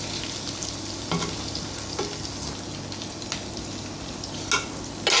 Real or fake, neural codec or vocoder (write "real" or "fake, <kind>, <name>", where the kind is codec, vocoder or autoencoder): real